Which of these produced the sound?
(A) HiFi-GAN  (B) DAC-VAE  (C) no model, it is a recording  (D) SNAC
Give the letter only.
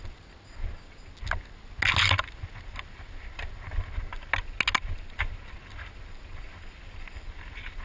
C